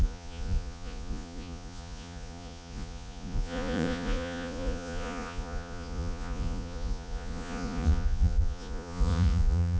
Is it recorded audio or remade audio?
remade